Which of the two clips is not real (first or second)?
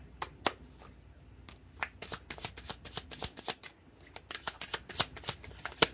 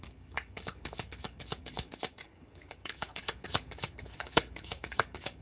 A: second